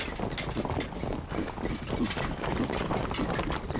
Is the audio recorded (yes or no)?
yes